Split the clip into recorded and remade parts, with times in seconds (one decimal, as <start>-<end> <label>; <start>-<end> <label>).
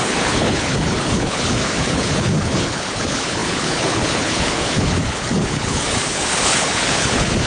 0.0-7.5 remade